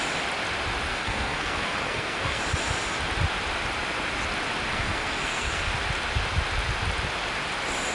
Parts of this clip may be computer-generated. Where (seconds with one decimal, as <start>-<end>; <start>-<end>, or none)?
0.9-2.4; 4.7-5.7